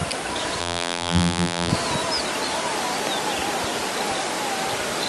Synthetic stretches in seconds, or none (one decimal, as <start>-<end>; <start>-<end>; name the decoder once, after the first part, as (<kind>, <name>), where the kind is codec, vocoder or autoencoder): 0.6-1.7 (vocoder, BigVGAN v2)